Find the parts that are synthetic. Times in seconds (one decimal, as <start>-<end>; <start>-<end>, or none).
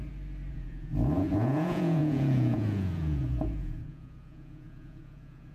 0.5-5.5